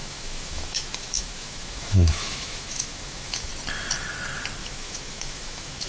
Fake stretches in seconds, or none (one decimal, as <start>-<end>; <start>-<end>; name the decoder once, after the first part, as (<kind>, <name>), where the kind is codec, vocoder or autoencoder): 0.0-3.5 (autoencoder, DAC-VAE); 4.6-5.9